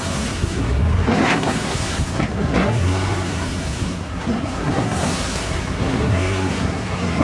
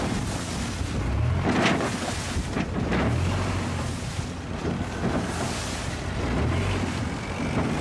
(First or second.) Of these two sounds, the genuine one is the second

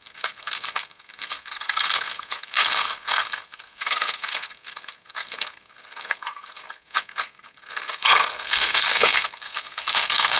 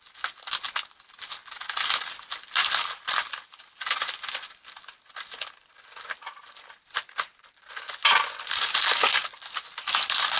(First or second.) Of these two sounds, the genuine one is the second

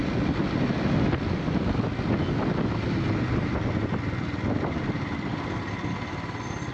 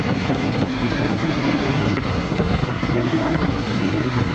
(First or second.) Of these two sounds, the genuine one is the first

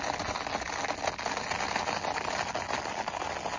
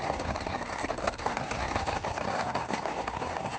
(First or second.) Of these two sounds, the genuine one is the first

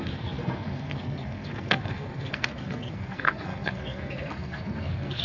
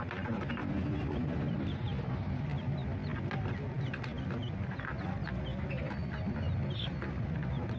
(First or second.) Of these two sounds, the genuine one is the second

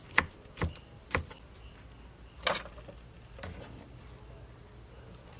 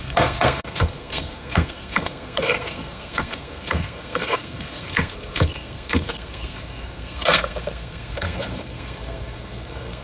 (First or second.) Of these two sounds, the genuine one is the first